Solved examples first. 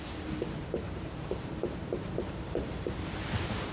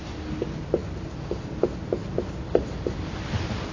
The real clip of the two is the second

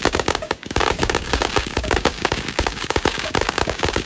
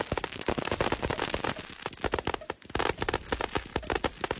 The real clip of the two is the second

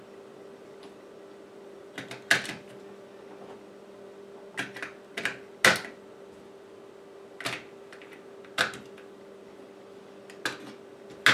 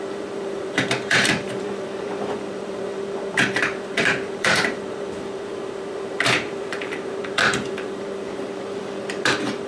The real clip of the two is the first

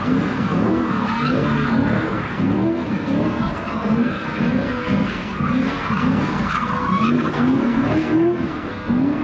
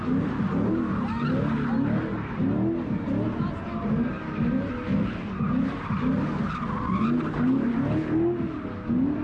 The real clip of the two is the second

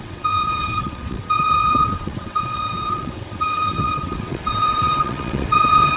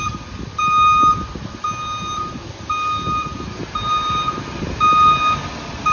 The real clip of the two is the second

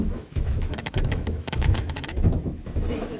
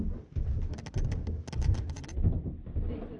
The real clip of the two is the second